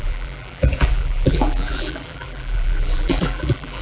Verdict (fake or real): fake